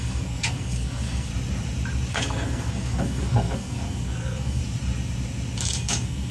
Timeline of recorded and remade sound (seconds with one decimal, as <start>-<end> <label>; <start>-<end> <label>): 0.0-1.3 remade; 1.3-2.1 recorded; 2.1-4.6 remade; 4.6-5.6 recorded; 5.6-6.3 remade